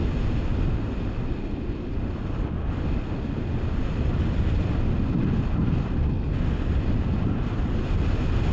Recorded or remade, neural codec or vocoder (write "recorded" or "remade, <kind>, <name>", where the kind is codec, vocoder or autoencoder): recorded